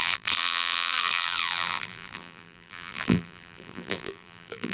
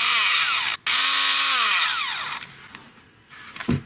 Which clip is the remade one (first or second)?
first